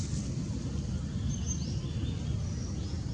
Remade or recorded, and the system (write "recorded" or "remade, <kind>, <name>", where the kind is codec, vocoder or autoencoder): recorded